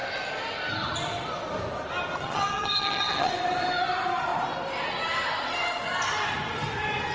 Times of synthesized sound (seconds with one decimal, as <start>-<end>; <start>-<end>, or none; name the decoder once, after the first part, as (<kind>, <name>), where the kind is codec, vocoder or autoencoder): 2.2-3.3 (vocoder, HiFi-GAN)